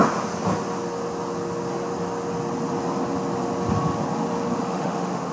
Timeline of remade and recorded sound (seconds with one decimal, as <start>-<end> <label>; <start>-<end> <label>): 0.0-4.5 recorded; 4.5-5.3 remade